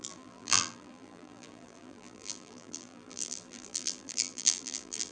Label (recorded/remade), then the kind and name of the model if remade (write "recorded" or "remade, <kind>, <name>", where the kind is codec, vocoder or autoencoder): remade, vocoder, BigVGAN v2